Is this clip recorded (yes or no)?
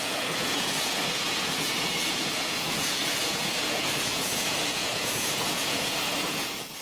no